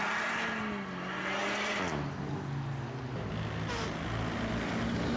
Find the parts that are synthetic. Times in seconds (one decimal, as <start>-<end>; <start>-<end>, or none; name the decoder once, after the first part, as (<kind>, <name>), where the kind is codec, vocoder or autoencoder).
none